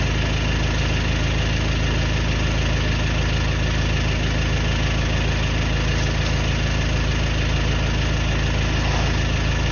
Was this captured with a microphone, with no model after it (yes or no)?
yes